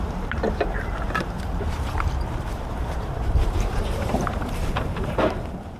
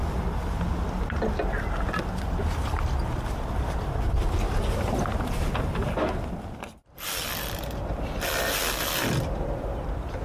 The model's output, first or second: first